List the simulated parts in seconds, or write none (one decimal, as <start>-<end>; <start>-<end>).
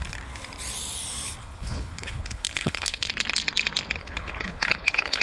1.4-3.1; 4.0-5.2